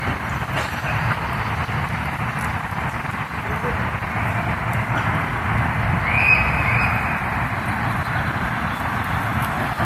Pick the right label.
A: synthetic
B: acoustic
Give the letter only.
B